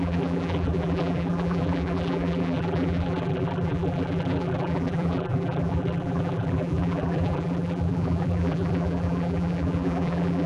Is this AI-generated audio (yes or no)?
yes